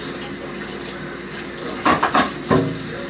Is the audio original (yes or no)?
yes